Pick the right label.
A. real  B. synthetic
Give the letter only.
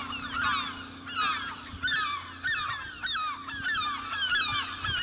A